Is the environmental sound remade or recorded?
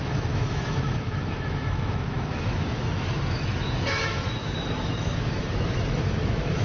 remade